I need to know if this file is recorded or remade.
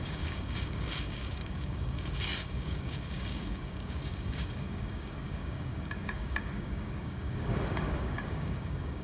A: remade